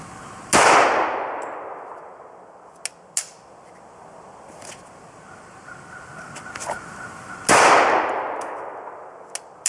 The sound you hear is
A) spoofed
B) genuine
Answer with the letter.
B